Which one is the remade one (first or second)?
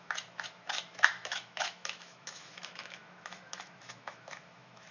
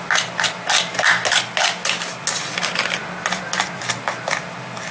first